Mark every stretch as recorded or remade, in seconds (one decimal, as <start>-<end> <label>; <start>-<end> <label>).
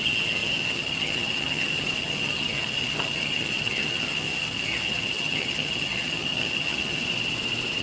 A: 0.0-7.0 remade; 7.0-7.8 recorded